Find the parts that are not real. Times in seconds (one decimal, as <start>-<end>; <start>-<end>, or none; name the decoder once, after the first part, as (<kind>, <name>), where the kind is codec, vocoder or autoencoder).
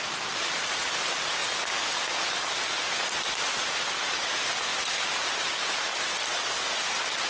1.4-2.7 (vocoder, BigVGAN v2); 4.7-5.3